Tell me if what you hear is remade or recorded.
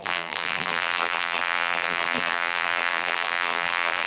remade